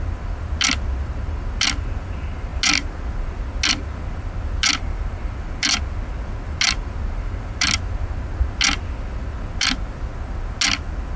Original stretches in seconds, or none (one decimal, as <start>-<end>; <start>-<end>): 0.0-11.2